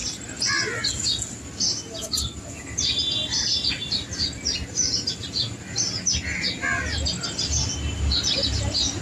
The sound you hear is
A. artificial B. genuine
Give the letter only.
B